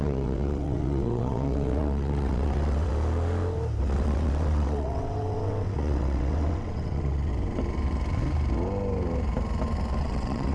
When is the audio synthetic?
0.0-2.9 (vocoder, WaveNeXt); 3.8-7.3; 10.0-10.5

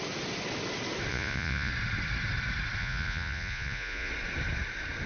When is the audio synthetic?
1.1-1.7 (vocoder, Vocos); 2.8-4.1

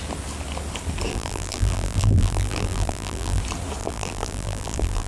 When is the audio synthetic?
1.1-3.4 (vocoder, BigVGAN v2); 3.8-5.1